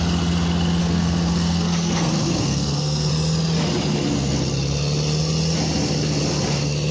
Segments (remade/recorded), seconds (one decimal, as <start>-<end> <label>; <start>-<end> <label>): 0.0-0.8 recorded; 0.8-3.1 remade; 3.1-6.9 recorded